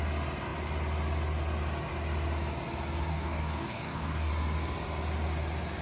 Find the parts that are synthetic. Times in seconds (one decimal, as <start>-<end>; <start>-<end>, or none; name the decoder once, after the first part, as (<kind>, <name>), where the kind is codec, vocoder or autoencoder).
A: 3.1-4.3 (codec, DAC)